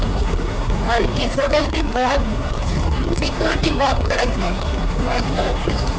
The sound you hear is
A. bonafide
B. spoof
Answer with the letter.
B